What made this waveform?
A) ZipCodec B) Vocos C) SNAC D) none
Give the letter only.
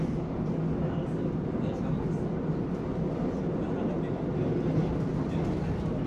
D